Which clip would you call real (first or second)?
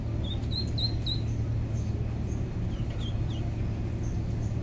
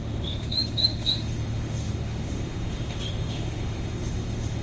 first